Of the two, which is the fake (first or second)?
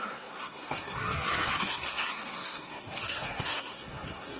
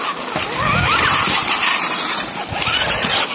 first